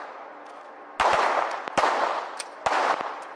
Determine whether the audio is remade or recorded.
recorded